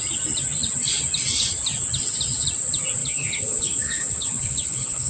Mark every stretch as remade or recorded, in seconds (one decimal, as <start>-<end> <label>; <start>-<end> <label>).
0.0-3.0 recorded; 3.0-5.1 remade